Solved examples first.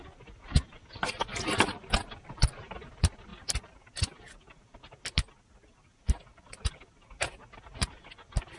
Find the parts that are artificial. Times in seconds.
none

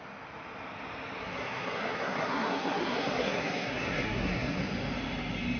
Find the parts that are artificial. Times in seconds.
1.2-4.6 (codec, SNAC)

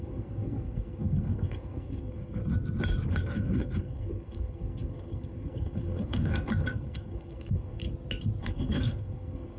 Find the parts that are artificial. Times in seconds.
0.0-2.4 (codec, SNAC); 3.1-7.8; 8.4-9.6

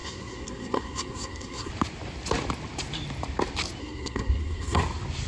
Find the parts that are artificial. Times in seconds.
0.0-1.7 (codec, SNAC); 3.8-4.8